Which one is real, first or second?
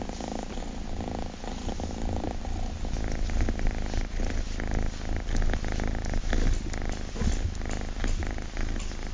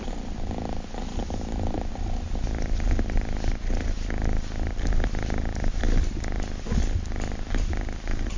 first